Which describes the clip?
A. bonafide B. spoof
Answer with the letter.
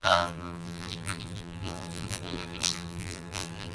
B